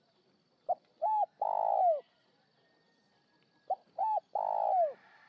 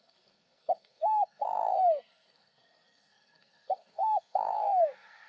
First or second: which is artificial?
second